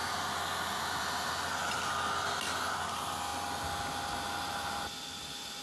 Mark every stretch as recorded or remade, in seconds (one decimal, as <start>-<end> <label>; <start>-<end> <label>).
0.0-5.6 recorded